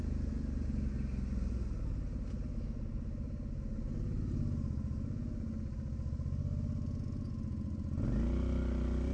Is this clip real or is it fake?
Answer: real